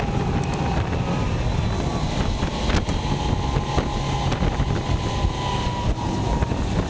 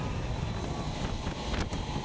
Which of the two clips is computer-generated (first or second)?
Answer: second